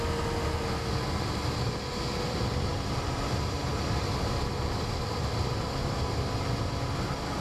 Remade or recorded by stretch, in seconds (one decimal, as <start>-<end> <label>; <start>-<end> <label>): 0.0-2.7 recorded; 2.7-7.4 remade